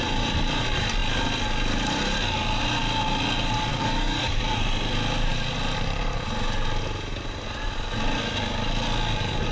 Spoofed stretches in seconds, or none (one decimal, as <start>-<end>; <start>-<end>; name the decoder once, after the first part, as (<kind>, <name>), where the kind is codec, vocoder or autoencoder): 3.7-4.4 (codec, DAC)